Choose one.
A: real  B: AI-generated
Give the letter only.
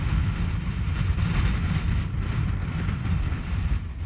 A